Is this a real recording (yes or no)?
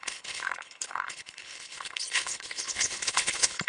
no